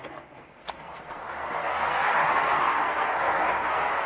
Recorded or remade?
remade